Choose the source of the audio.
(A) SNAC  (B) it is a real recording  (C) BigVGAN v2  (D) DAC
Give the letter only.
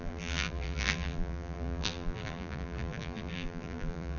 C